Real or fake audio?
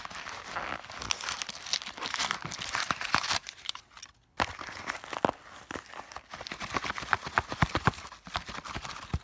real